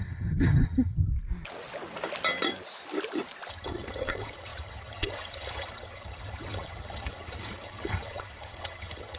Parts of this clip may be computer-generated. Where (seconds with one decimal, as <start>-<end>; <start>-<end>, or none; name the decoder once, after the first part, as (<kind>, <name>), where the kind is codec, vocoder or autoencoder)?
0.0-1.1 (vocoder, HiFi-GAN); 3.5-9.2